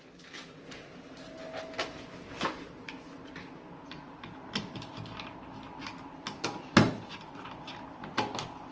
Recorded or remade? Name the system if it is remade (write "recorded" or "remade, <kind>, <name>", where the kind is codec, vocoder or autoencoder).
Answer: recorded